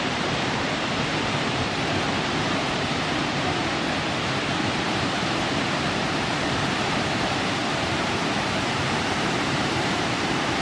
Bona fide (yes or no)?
no